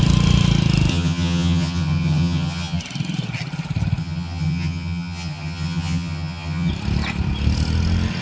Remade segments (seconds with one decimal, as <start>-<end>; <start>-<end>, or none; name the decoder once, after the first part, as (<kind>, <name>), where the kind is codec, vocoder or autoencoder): 0.9-2.8 (vocoder, HiFi-GAN); 4.0-6.7